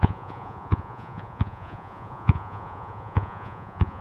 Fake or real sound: fake